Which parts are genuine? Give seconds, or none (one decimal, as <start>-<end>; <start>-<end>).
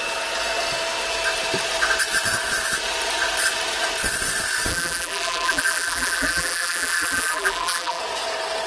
0.0-4.7; 8.0-8.7